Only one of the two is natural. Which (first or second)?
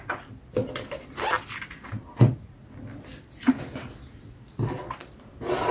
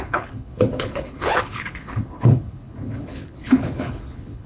first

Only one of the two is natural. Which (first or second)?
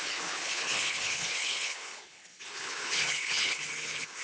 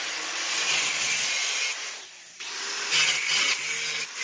second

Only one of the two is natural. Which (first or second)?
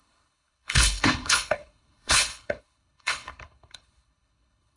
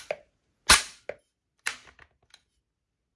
second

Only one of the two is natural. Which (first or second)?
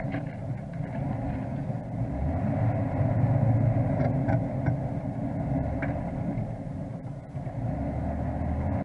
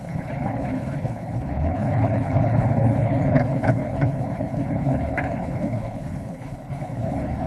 first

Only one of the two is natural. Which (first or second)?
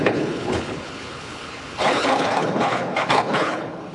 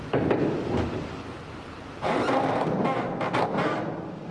second